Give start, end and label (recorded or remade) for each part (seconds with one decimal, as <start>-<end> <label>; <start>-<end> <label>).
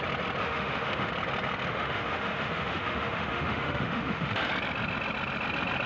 0.0-0.4 recorded; 0.4-1.1 remade; 1.1-1.7 recorded; 1.7-4.5 remade; 4.5-5.9 recorded